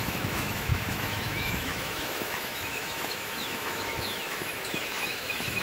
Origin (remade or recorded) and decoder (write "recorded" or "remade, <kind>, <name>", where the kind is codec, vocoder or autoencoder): remade, autoencoder, DAC-VAE